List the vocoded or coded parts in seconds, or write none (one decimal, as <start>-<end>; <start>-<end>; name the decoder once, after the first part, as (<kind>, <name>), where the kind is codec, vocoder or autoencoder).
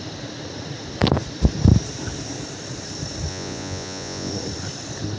3.3-4.3 (vocoder, Vocos)